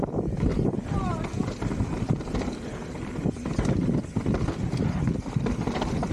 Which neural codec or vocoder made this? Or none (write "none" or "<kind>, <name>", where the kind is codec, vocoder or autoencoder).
none